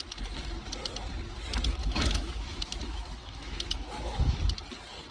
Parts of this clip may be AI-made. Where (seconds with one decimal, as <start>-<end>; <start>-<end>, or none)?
1.8-4.4